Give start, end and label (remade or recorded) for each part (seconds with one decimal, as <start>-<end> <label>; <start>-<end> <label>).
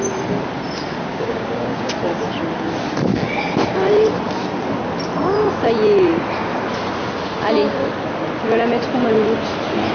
0.0-1.1 recorded; 1.1-1.9 remade; 1.9-9.9 recorded